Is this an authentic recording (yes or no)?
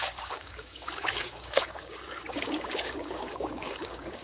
no